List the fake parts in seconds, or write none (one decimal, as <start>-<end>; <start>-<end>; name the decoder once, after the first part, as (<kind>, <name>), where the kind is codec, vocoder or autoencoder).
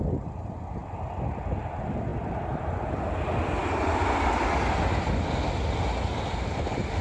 0.8-1.7 (vocoder, BigVGAN v2); 2.1-2.8; 3.6-4.4